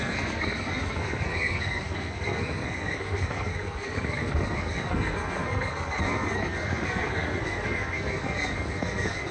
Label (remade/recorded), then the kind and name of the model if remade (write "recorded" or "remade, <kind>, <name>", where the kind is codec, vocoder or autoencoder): remade, codec, SNAC